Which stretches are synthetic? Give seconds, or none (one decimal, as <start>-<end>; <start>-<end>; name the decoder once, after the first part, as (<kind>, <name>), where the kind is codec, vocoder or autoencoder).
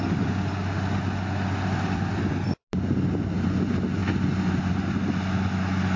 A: none